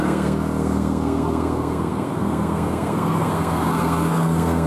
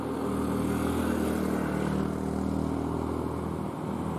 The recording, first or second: second